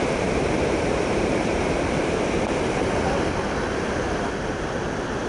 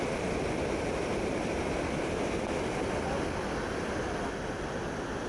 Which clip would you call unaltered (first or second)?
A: second